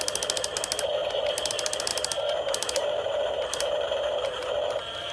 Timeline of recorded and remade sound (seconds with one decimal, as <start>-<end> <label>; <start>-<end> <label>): 0.0-1.9 recorded; 1.9-4.5 remade; 4.5-5.1 recorded